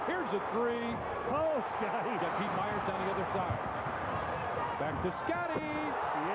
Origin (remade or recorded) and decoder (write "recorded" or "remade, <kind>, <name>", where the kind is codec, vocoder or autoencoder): recorded